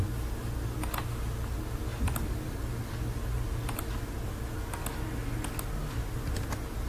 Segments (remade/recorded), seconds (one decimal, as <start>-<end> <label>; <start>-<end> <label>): 0.0-6.9 recorded

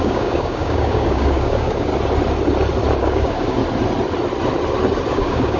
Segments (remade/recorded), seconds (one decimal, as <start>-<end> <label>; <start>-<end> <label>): 0.0-1.9 remade; 1.9-3.0 recorded; 3.0-3.6 remade; 3.6-5.1 recorded; 5.1-5.6 remade